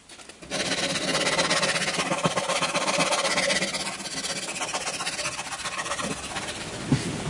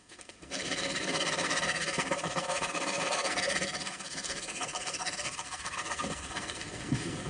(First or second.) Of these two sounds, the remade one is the second